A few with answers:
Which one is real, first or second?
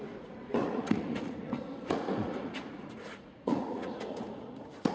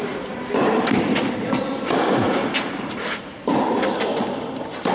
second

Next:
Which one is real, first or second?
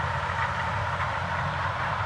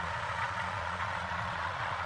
first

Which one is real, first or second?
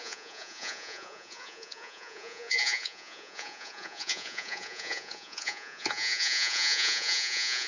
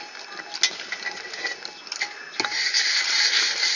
second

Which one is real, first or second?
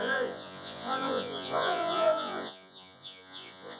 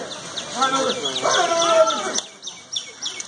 second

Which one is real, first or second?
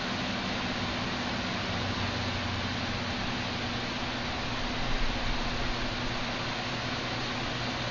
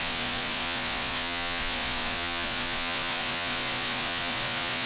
first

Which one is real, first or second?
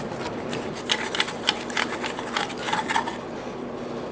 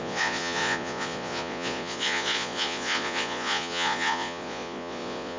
first